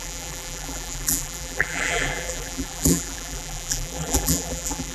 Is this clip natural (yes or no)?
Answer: no